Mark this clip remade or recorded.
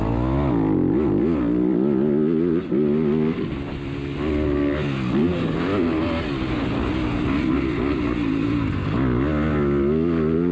recorded